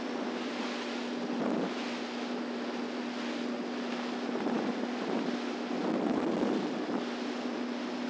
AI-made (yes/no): no